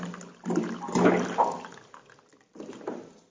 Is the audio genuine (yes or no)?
yes